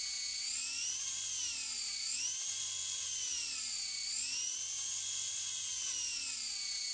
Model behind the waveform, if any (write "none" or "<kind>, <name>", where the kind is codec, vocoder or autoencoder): none